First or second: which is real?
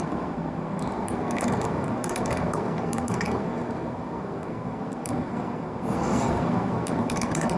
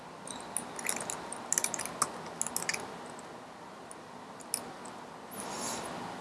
second